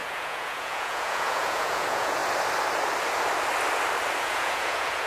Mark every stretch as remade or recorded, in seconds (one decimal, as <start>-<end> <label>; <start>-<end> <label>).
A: 0.0-2.2 remade; 2.2-4.2 recorded; 4.2-5.1 remade

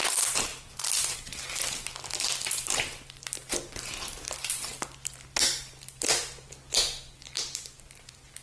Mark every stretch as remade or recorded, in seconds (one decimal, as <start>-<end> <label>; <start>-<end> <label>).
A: 0.0-8.4 recorded

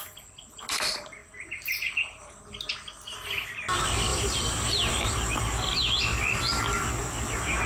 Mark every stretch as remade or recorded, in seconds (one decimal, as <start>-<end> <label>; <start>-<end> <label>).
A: 0.0-1.2 recorded; 1.2-2.3 remade; 2.3-4.1 recorded; 4.1-5.4 remade; 5.4-7.7 recorded

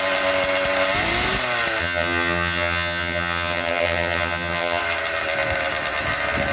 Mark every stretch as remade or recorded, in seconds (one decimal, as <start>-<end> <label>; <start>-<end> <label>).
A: 0.0-1.8 recorded; 1.8-4.8 remade; 4.8-6.5 recorded

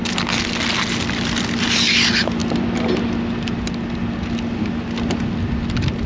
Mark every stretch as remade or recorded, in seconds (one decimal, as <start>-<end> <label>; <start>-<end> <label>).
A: 0.0-6.1 recorded

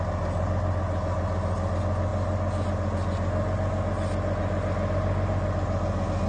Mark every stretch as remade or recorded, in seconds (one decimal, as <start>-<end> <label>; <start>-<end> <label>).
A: 0.0-6.3 recorded

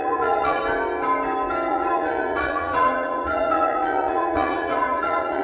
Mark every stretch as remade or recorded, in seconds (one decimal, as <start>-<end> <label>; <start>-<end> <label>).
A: 0.0-0.6 remade; 0.6-1.7 recorded; 1.7-5.4 remade

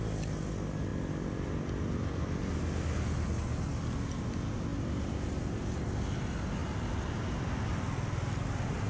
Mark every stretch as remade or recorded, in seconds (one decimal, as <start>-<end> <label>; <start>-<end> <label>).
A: 0.0-8.9 recorded